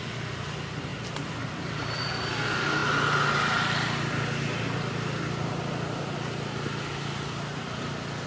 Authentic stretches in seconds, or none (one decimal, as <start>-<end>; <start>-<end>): 0.0-8.3